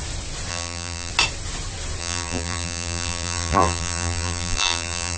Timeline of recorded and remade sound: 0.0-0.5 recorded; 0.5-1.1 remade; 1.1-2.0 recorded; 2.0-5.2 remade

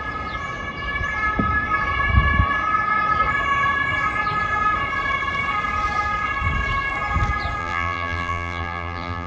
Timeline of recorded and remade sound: 0.0-7.6 recorded; 7.6-9.3 remade

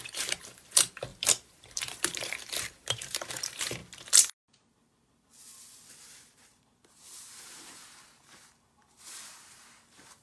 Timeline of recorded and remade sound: 0.0-3.8 remade; 3.8-5.9 recorded; 5.9-10.2 remade